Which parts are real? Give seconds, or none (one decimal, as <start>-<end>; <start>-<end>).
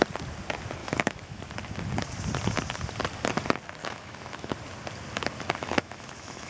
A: 0.0-0.8; 1.4-3.8; 4.5-5.6